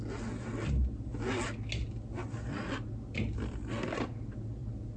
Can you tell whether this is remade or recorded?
recorded